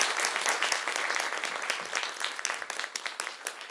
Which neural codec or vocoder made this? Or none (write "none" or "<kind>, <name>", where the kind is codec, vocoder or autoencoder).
none